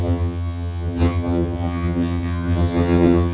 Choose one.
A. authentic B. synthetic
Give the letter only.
B